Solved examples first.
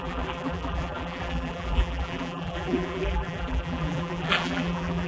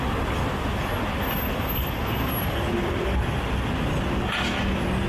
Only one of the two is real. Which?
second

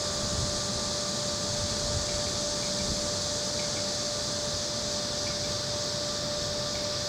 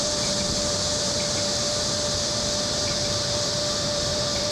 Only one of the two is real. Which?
first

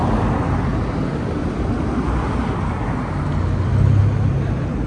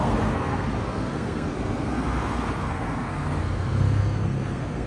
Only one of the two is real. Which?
first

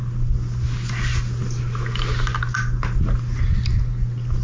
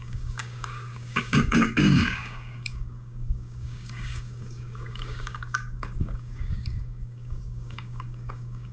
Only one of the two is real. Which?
first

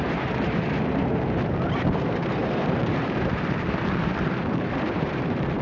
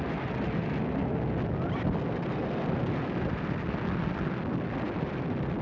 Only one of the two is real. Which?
second